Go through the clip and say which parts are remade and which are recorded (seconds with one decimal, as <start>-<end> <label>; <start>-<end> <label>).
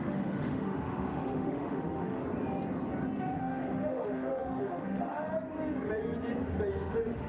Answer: 0.0-2.2 remade; 2.2-3.2 recorded; 3.2-5.3 remade; 5.3-6.7 recorded; 6.7-7.3 remade